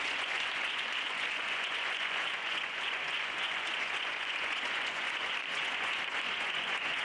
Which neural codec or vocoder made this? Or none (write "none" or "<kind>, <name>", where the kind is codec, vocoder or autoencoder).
vocoder, Vocos